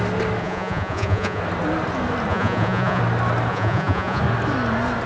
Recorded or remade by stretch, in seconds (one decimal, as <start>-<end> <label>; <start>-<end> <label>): 0.0-0.4 recorded; 0.4-1.4 remade; 1.4-2.3 recorded; 2.3-3.0 remade; 3.0-3.5 recorded; 3.5-4.2 remade; 4.2-5.1 recorded